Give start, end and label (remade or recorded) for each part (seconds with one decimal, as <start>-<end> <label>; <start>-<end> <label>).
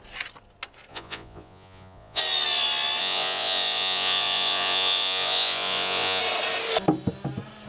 0.0-0.9 recorded; 0.9-2.2 remade; 2.2-3.0 recorded; 3.0-6.2 remade; 6.2-7.7 recorded